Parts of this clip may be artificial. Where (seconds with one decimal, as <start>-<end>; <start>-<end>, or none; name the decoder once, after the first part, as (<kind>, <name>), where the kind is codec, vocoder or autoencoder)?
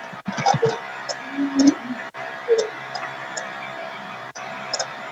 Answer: 3.8-5.1 (vocoder, BigVGAN v2)